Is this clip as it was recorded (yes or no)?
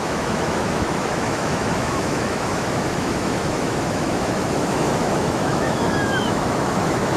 no